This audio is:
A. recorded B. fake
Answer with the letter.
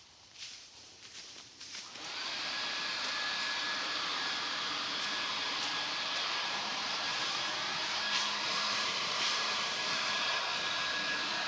B